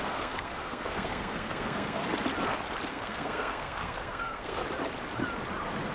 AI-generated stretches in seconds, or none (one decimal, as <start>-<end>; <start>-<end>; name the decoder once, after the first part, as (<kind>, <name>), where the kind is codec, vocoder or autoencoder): 0.0-2.0 (codec, SNAC); 2.9-4.6